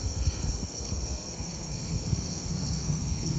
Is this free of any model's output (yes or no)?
no